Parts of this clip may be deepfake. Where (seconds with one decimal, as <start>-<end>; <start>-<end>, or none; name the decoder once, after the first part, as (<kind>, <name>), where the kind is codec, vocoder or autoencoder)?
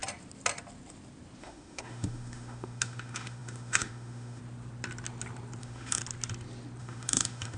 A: 1.4-4.4 (autoencoder, DAC-VAE); 5.6-6.0; 6.8-7.6